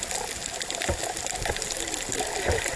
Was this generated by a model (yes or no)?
no